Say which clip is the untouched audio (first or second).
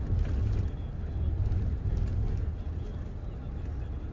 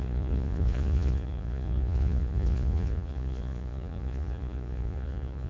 first